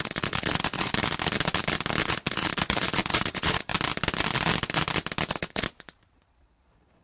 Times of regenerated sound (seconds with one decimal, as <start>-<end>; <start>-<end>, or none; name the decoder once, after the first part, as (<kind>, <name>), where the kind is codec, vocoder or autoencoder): 0.0-0.9 (vocoder, Vocos); 2.0-3.7; 5.3-7.0